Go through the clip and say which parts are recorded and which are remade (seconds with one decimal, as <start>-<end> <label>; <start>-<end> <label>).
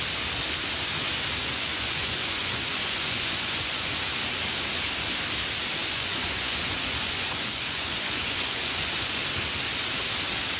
0.0-1.4 recorded; 1.4-3.9 remade; 3.9-5.8 recorded; 5.8-9.2 remade; 9.2-10.6 recorded